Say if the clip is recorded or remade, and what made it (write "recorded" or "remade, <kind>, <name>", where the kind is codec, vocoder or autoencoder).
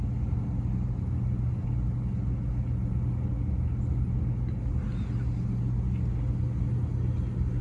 recorded